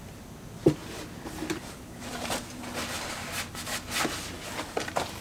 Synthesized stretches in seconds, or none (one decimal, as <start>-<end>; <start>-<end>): 0.8-2.6